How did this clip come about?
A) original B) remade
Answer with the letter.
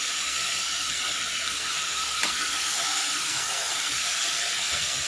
B